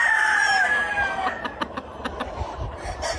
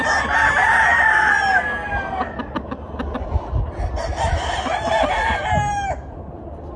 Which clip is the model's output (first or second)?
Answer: first